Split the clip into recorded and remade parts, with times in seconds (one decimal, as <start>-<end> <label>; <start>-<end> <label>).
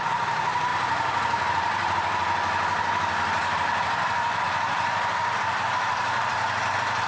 0.0-0.7 remade; 0.7-4.4 recorded; 4.4-7.1 remade